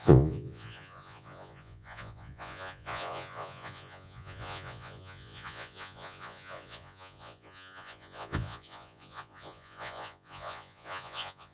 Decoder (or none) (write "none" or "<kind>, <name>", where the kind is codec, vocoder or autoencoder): vocoder, Vocos